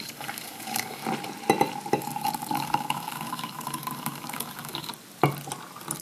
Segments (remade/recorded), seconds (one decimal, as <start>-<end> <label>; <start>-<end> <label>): 0.0-1.0 remade; 1.0-1.9 recorded; 1.9-4.9 remade; 4.9-6.0 recorded